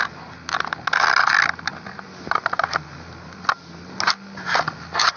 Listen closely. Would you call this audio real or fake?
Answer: real